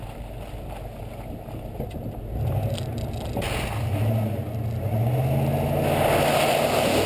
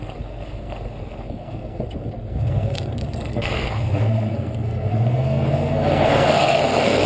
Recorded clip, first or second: first